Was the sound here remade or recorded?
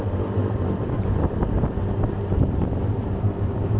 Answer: recorded